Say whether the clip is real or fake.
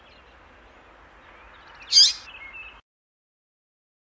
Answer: real